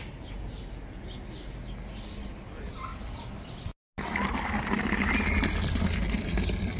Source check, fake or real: real